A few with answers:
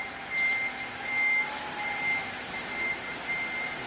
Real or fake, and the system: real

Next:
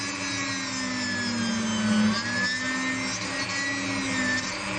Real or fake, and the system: real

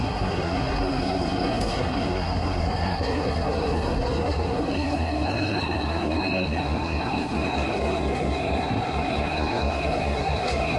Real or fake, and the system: fake, codec, SNAC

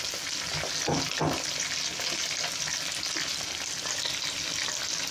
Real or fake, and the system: real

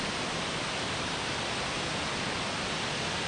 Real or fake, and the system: real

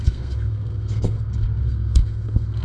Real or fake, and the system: fake, codec, SNAC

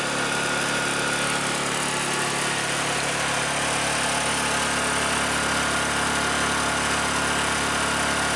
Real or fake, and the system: real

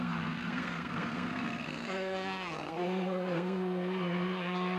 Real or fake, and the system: fake, codec, SNAC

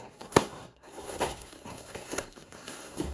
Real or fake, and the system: fake, codec, SNAC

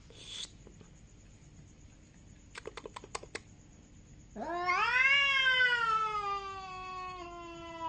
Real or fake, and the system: real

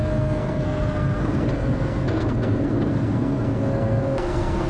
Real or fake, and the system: fake, codec, SNAC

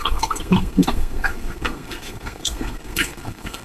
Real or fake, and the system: fake, codec, SNAC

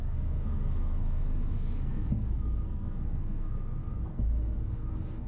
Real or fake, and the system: fake, codec, SNAC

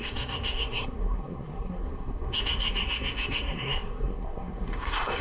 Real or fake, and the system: fake, codec, SNAC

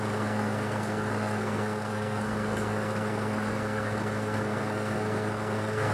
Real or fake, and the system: fake, codec, SNAC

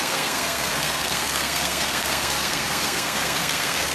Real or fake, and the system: fake, codec, SNAC